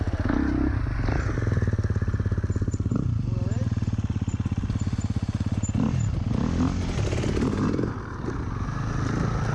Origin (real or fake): real